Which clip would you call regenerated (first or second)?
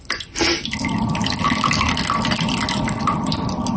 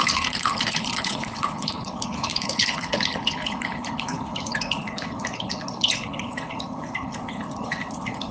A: second